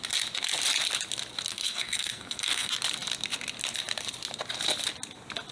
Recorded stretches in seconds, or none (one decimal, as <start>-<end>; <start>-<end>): 0.0-1.5; 2.7-5.5